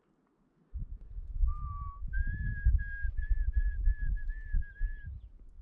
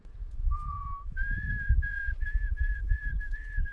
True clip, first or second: first